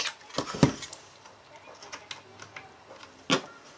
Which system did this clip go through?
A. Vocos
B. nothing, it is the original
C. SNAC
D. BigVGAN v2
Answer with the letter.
B